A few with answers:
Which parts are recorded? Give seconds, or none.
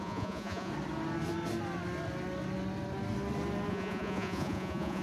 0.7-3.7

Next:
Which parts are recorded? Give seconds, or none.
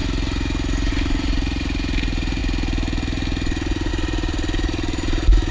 0.0-0.9; 2.4-3.9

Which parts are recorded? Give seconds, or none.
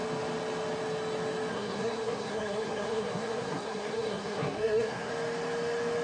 0.0-1.5; 5.1-6.0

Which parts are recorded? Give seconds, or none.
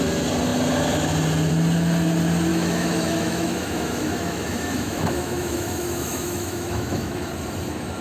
0.0-2.5; 7.3-8.0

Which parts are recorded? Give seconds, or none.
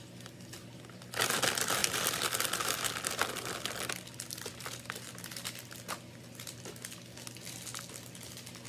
0.0-8.7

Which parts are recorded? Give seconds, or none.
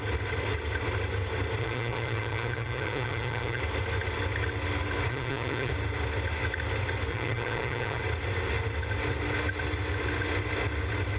0.0-1.6; 3.6-5.1; 5.7-7.1; 8.0-11.2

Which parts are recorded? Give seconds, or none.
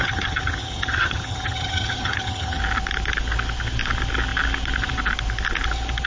2.6-6.1